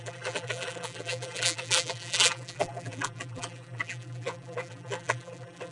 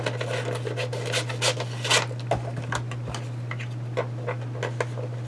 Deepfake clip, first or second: first